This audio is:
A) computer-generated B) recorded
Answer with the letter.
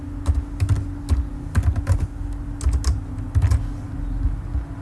B